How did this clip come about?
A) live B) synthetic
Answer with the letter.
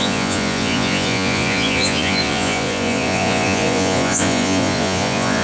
B